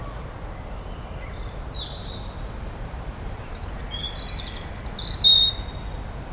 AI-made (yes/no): no